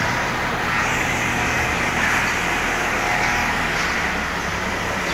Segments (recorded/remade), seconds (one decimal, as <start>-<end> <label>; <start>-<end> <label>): 0.0-0.8 recorded; 0.8-1.9 remade; 1.9-2.8 recorded; 2.8-3.8 remade; 3.8-5.1 recorded

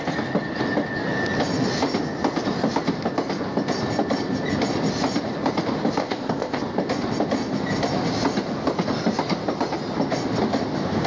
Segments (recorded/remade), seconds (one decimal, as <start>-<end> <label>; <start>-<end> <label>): 0.0-6.0 recorded; 6.0-6.6 remade; 6.6-11.1 recorded

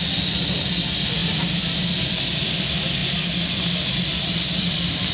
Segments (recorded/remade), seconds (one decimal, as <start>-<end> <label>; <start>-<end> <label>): 0.0-5.1 recorded